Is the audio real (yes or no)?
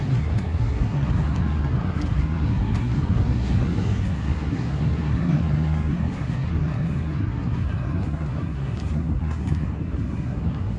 no